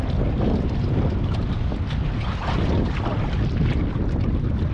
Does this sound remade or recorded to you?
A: recorded